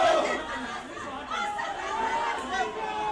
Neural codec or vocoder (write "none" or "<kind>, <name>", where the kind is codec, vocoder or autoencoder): none